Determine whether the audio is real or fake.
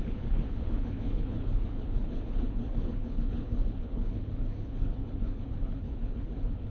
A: fake